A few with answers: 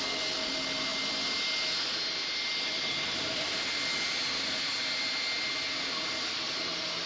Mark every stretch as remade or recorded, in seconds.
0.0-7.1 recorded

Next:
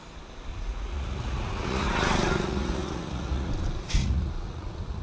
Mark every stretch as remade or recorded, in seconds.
0.0-0.5 recorded; 0.5-3.5 remade; 3.5-4.0 recorded; 4.0-5.0 remade

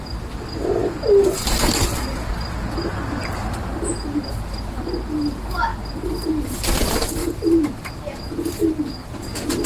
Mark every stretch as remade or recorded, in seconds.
0.0-9.7 recorded

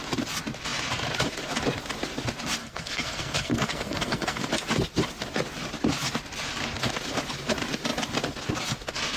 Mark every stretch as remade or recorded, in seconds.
0.0-2.6 recorded; 2.6-4.5 remade; 4.5-9.2 recorded

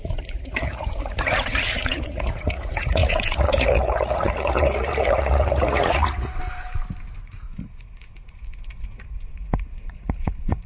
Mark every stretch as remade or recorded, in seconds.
0.0-6.4 remade; 6.4-7.2 recorded; 7.2-10.7 remade

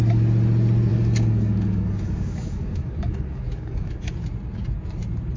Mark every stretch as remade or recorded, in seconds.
0.0-0.9 recorded; 0.9-4.1 remade; 4.1-5.4 recorded

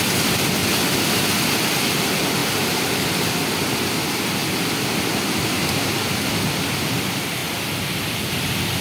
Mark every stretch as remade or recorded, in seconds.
0.0-2.4 remade; 2.4-3.6 recorded; 3.6-7.4 remade; 7.4-8.2 recorded; 8.2-8.8 remade

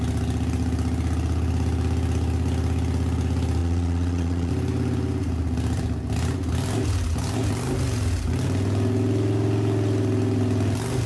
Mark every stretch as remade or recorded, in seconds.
0.0-3.6 recorded; 3.6-4.5 remade; 4.5-11.1 recorded